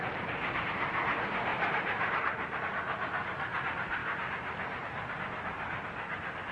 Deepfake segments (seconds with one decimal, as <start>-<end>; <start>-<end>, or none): 1.5-2.6

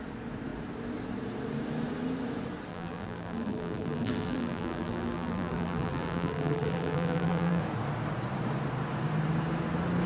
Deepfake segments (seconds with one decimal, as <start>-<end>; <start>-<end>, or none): 2.7-7.6

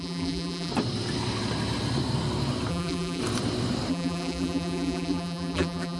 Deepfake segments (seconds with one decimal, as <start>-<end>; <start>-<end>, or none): 0.0-0.7; 2.7-3.2; 3.9-6.0

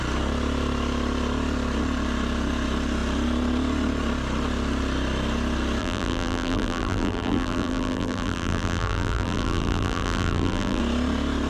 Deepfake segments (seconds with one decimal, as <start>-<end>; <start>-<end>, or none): 5.8-10.8

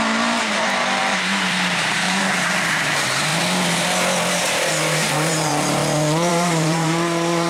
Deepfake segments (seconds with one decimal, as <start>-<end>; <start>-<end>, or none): 0.0-3.3; 4.7-5.8; 6.3-7.5

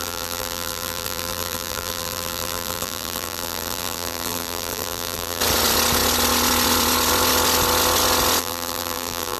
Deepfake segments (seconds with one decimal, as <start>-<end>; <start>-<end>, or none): 0.0-5.4; 8.4-9.4

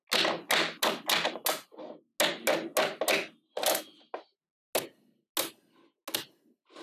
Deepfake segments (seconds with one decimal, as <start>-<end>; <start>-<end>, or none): none